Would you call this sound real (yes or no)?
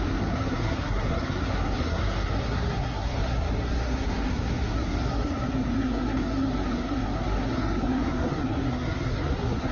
no